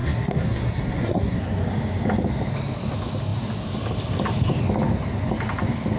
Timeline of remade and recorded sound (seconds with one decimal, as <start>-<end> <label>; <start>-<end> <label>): 0.0-1.4 remade; 1.4-6.0 recorded